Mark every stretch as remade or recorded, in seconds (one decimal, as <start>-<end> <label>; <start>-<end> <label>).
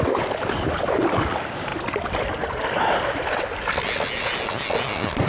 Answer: 0.0-5.3 recorded